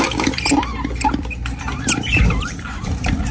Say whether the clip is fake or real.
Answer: fake